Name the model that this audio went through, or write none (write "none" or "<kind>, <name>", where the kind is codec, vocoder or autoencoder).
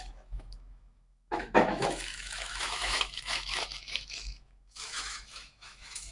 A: autoencoder, DAC-VAE